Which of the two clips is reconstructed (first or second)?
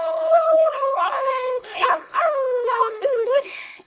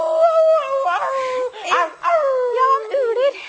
first